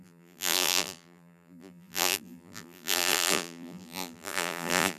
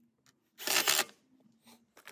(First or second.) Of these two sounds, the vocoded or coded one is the first